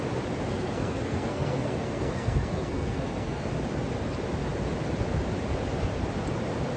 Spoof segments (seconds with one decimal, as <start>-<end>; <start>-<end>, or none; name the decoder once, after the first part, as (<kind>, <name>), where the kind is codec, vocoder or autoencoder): 0.5-3.5 (codec, SNAC)